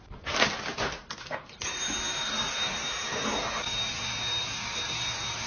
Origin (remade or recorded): recorded